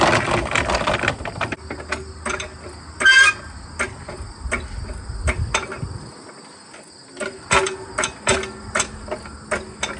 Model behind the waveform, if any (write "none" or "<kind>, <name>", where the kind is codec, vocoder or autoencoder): none